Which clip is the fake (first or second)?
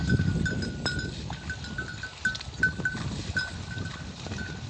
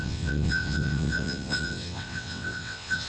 second